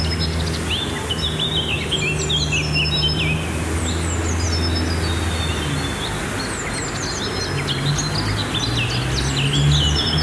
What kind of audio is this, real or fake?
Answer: real